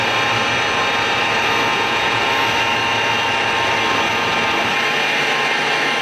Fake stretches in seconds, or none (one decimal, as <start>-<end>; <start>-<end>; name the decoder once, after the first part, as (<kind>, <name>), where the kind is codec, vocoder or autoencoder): 1.7-2.2 (vocoder, Vocos)